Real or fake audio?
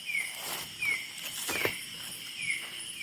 real